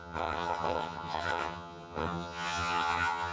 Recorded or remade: remade